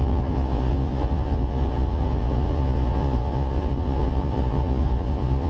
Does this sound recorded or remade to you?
remade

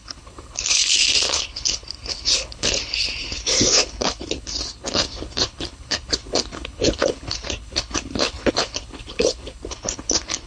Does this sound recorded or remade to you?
remade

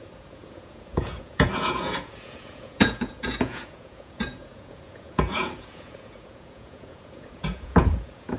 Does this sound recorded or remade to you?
remade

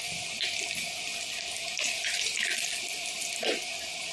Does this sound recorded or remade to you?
recorded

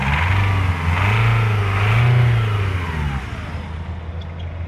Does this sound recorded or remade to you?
recorded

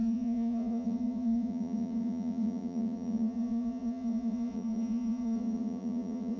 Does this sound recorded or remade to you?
remade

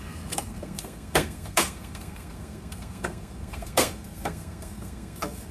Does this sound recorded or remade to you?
remade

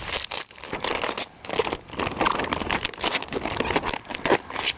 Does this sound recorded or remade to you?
recorded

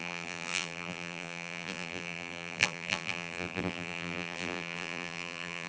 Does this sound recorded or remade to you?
remade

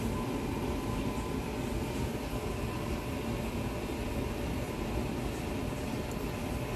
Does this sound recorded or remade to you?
recorded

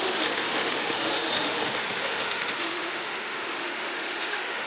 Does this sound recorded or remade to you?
remade